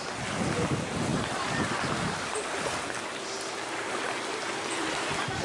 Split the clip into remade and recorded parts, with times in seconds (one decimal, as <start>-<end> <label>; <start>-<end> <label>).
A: 0.0-5.4 recorded